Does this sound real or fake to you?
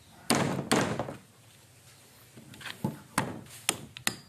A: real